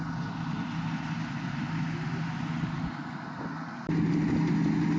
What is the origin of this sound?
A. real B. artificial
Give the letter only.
A